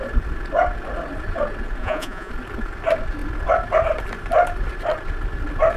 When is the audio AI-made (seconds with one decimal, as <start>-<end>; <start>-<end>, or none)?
1.8-2.3

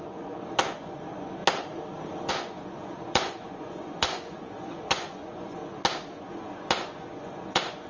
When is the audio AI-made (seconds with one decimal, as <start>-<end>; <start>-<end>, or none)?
0.0-1.4; 2.3-5.6; 6.2-7.9

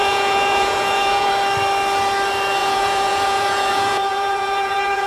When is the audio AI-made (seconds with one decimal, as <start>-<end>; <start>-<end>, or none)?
0.0-1.3; 2.6-5.1

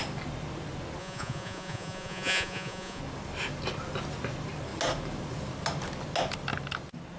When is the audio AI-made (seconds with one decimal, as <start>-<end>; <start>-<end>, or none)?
1.0-3.0

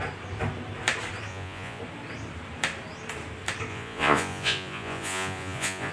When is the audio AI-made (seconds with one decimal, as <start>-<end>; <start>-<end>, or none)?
1.3-1.8; 3.7-5.9

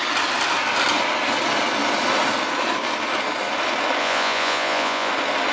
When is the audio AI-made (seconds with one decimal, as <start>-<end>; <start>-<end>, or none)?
4.0-5.1

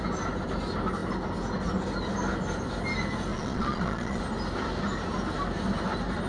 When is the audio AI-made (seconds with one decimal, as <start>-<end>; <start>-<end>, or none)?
3.3-4.2

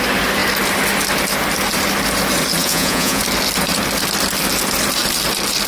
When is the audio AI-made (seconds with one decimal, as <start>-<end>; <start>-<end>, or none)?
2.6-3.2